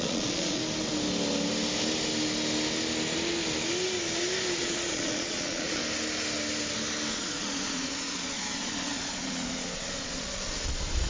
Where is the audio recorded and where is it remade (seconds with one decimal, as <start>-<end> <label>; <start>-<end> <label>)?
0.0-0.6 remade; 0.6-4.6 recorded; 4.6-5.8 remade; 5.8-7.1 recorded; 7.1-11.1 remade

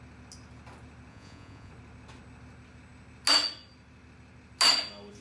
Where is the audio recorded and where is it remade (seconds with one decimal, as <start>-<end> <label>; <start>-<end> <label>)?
0.0-1.1 recorded; 1.1-1.7 remade; 1.7-5.2 recorded

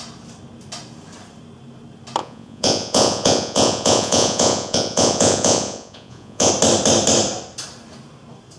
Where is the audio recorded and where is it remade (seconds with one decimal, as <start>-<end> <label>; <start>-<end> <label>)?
0.0-2.2 recorded; 2.2-6.5 remade; 6.5-8.6 recorded